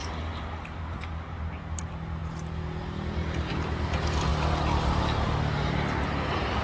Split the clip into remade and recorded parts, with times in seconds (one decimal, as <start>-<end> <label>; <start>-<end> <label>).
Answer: 0.0-6.6 recorded